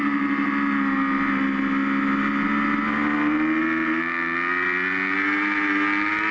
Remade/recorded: recorded